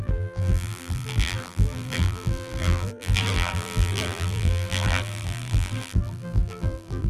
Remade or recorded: remade